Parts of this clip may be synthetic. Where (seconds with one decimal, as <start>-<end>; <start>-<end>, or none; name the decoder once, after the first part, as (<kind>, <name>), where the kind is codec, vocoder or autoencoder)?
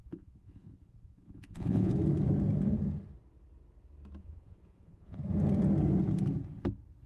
0.0-1.9 (vocoder, Vocos); 4.2-5.2